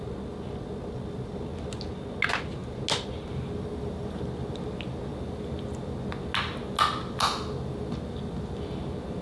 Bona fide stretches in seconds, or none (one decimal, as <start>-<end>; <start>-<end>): 0.0-9.2

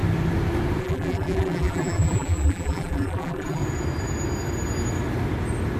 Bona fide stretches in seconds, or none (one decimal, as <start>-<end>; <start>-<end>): 0.0-0.8; 3.6-5.8

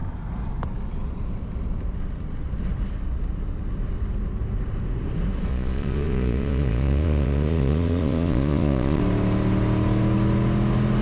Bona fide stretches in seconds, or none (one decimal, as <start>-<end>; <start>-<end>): 0.0-5.5; 9.0-11.0

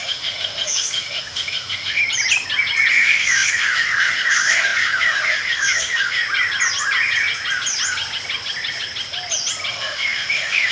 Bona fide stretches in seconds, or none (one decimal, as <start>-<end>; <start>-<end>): 2.0-2.9; 6.2-9.7